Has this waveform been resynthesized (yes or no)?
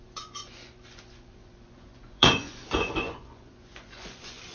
yes